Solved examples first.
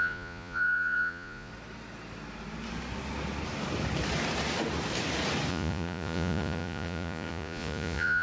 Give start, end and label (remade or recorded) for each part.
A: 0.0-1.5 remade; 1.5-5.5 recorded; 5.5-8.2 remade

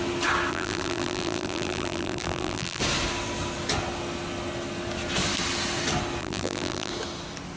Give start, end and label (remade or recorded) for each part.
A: 0.0-0.5 recorded; 0.5-2.8 remade; 2.8-6.2 recorded; 6.2-6.9 remade; 6.9-7.6 recorded